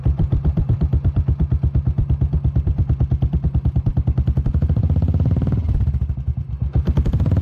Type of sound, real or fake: real